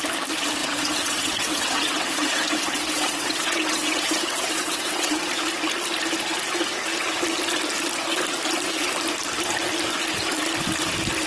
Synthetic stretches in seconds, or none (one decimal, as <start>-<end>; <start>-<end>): 0.6-5.3